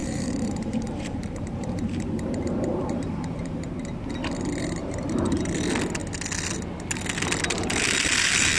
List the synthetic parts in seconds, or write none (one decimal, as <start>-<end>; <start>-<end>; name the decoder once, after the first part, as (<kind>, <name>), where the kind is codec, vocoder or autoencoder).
0.0-3.7 (vocoder, BigVGAN v2); 4.8-5.4